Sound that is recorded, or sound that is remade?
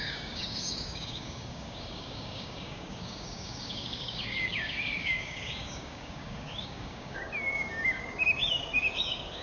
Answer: remade